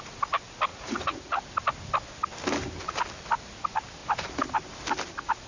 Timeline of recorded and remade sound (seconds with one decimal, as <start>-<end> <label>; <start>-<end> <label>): 0.0-0.7 recorded; 0.7-1.4 remade; 1.4-5.5 recorded